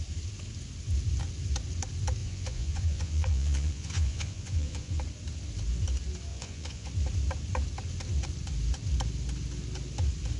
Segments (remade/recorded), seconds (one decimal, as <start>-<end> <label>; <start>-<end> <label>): 0.0-2.2 recorded; 2.2-5.0 remade; 5.0-6.3 recorded; 6.3-6.9 remade; 6.9-10.4 recorded